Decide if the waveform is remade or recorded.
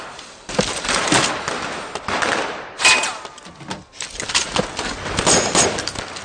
recorded